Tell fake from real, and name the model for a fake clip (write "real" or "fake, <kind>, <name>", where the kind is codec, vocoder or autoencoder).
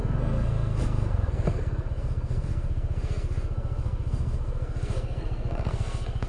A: fake, codec, SNAC